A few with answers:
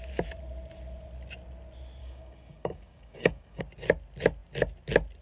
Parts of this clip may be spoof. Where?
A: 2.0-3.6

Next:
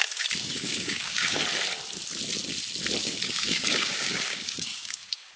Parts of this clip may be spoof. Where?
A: 0.0-1.4; 3.0-5.4

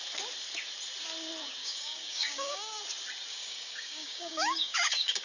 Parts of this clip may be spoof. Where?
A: 1.6-2.8; 3.3-5.2

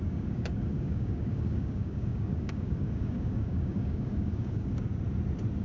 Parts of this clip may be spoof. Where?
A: 0.0-4.9

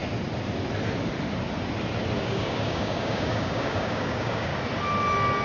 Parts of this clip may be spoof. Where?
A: 2.2-4.5

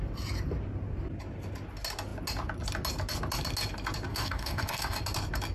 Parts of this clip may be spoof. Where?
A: 4.1-5.0